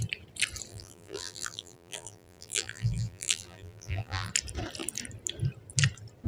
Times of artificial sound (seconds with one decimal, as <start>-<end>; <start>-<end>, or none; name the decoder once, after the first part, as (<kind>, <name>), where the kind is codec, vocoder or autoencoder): 0.7-4.3 (vocoder, BigVGAN v2)